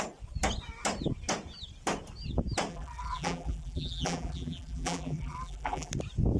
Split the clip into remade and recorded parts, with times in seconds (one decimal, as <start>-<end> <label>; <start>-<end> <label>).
0.0-2.7 recorded; 2.7-5.9 remade; 5.9-6.4 recorded